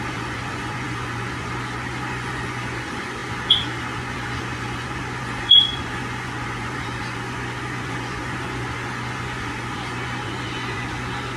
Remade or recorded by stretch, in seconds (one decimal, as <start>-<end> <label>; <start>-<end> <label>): 0.0-11.4 remade